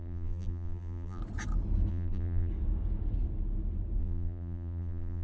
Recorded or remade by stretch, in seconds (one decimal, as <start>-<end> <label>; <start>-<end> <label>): 0.0-1.2 remade; 1.2-1.9 recorded; 1.9-2.5 remade; 2.5-4.0 recorded; 4.0-5.2 remade